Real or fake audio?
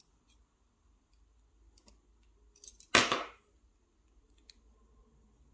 real